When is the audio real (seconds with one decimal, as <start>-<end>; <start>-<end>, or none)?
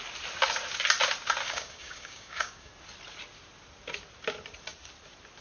0.0-1.4; 2.7-5.4